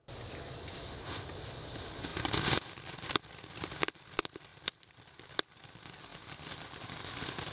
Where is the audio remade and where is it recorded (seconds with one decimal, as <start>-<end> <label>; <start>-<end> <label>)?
0.0-4.5 recorded; 4.5-5.5 remade; 5.5-7.5 recorded